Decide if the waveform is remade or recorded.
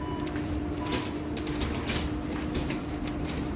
remade